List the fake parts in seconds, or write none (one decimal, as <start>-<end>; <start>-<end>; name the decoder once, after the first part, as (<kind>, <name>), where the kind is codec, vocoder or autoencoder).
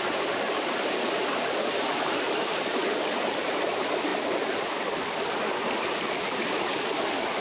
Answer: none